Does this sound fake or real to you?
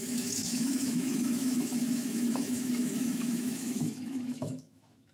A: fake